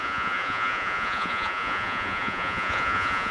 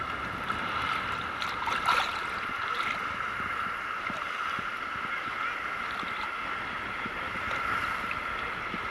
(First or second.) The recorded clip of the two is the second